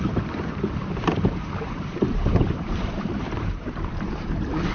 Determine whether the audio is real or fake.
fake